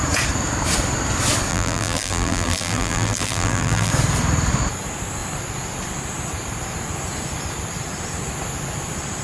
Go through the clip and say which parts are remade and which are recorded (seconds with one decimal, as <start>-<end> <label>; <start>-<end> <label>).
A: 0.0-1.5 recorded; 1.5-3.9 remade; 3.9-9.2 recorded